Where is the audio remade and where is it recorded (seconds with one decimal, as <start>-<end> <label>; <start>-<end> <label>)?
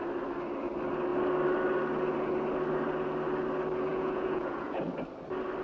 0.0-3.9 recorded; 3.9-4.9 remade; 4.9-5.6 recorded